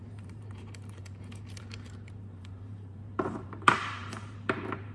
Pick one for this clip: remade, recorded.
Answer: remade